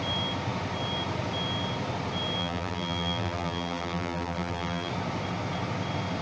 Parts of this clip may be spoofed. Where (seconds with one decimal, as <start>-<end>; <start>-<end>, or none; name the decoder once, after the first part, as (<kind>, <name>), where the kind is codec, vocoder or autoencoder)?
2.4-4.9 (vocoder, BigVGAN v2)